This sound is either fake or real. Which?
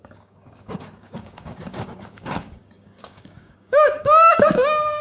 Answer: fake